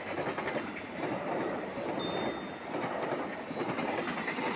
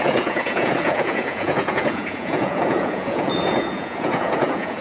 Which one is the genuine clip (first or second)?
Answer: first